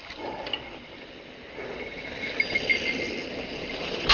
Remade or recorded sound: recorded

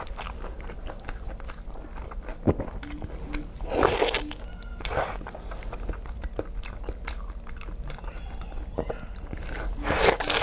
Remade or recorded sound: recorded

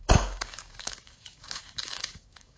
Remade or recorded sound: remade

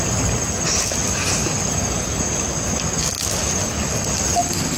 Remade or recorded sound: recorded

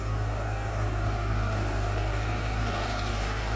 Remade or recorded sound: remade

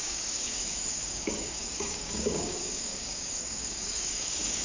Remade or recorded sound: remade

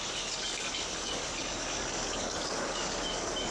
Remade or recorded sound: remade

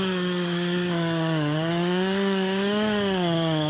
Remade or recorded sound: remade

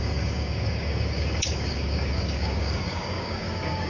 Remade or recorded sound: remade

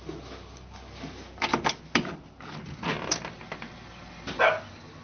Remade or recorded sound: recorded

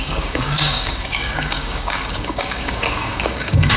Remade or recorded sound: remade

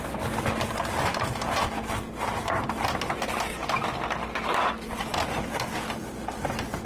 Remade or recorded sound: recorded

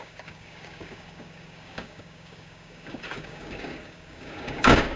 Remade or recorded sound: remade